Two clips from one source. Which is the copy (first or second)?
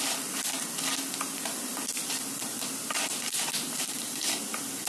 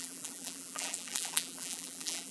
second